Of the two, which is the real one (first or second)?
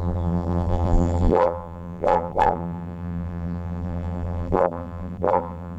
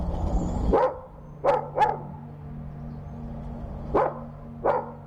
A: second